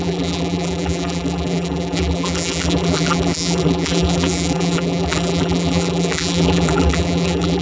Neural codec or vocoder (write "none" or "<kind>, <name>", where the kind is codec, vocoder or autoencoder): vocoder, BigVGAN v2